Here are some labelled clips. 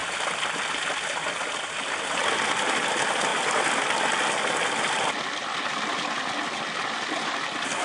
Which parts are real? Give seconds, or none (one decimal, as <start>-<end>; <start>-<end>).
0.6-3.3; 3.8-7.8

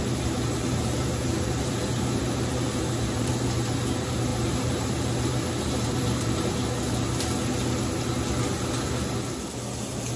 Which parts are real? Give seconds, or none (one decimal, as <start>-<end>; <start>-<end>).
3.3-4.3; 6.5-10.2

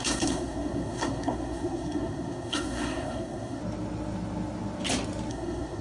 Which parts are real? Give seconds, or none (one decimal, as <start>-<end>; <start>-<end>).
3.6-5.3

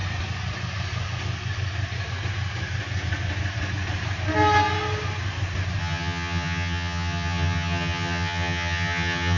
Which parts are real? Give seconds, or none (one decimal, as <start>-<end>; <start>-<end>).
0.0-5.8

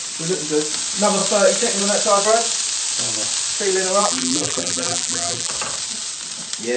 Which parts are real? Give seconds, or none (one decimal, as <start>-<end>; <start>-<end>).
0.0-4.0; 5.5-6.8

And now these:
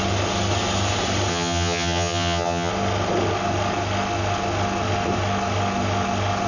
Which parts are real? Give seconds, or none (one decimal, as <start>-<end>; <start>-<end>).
0.0-1.3; 2.7-6.5

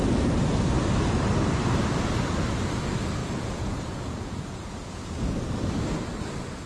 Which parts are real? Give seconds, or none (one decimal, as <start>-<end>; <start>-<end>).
0.0-3.2; 5.2-6.7

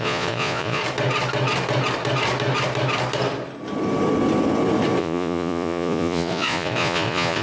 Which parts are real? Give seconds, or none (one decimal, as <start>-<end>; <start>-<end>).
0.8-5.0